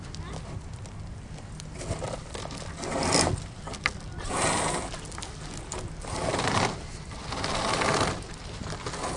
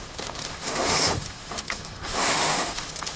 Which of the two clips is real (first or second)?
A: first